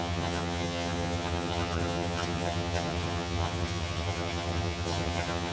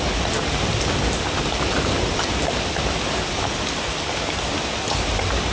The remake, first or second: first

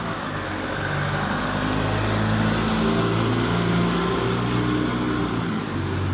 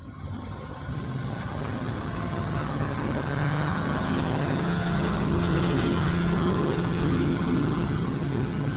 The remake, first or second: second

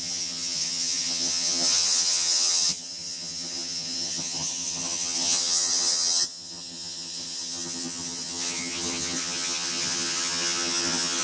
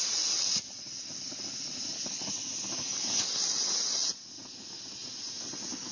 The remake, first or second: first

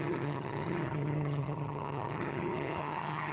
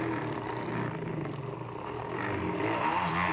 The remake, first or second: first